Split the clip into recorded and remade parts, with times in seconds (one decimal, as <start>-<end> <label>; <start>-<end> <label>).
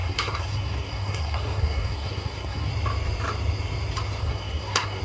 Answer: 0.0-2.7 remade; 2.7-4.2 recorded; 4.2-5.0 remade